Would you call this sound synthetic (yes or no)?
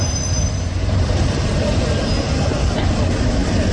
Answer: no